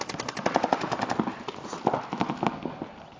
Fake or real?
real